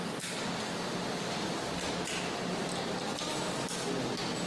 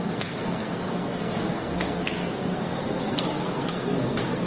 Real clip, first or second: first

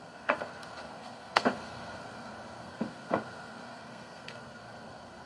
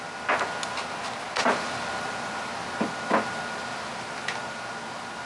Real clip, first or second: second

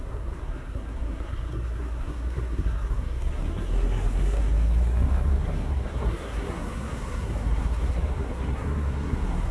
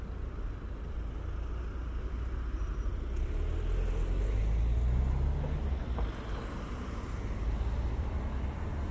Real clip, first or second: second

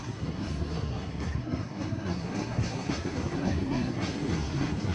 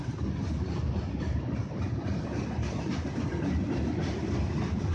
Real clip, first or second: second